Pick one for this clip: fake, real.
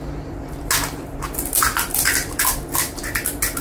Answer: real